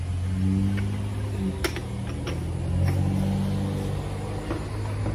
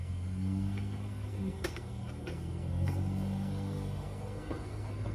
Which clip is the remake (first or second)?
second